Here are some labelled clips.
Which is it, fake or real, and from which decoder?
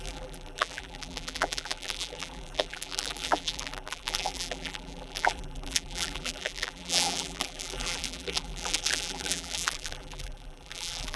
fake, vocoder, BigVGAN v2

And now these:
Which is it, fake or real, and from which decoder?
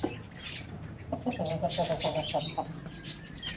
fake, vocoder, BigVGAN v2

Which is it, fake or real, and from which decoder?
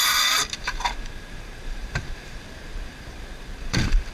fake, vocoder, BigVGAN v2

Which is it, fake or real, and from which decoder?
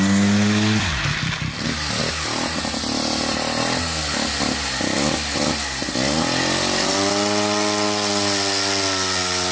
real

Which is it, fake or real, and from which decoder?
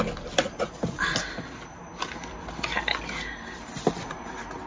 real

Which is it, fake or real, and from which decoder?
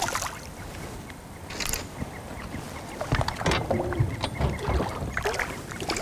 real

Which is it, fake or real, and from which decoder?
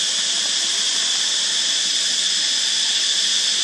real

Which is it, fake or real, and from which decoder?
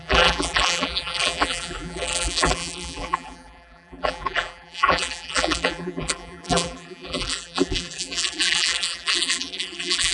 fake, vocoder, BigVGAN v2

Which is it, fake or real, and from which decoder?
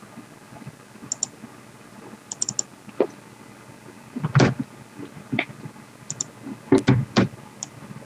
real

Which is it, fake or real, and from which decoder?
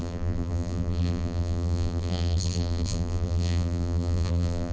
fake, vocoder, BigVGAN v2